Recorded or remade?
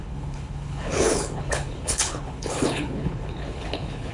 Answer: remade